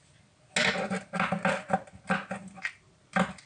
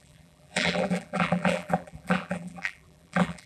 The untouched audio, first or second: first